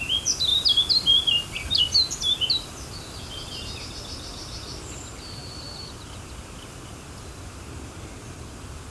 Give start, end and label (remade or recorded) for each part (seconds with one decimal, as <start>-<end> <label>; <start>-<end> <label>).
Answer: 0.0-5.4 recorded; 5.4-6.0 remade; 6.0-8.9 recorded